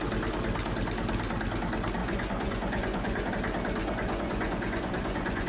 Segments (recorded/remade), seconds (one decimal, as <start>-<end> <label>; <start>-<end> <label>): 0.0-2.0 recorded; 2.0-3.3 remade; 3.3-3.8 recorded; 3.8-5.5 remade